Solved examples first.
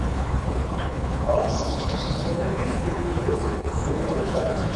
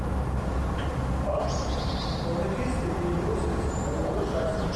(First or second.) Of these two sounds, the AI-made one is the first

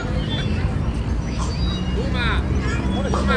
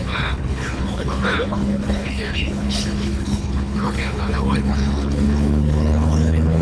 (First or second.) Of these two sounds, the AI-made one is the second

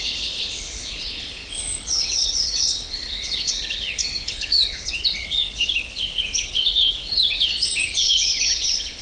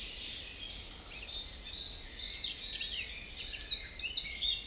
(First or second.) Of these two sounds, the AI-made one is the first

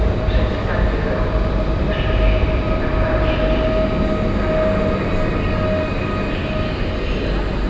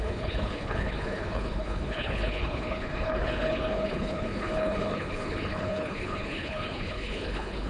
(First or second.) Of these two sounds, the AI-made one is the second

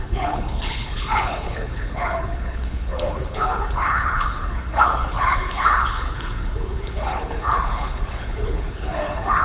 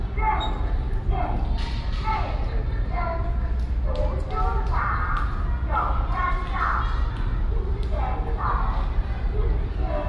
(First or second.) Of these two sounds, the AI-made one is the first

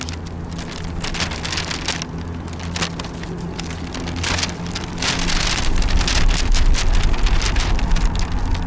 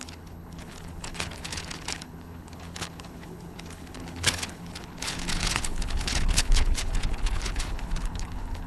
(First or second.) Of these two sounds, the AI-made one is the second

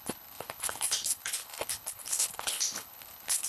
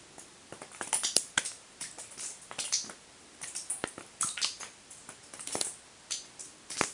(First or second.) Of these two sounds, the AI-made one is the first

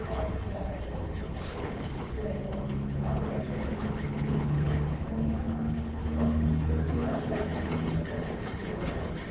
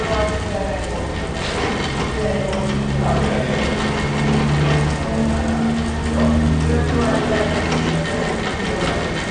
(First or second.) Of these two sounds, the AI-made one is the first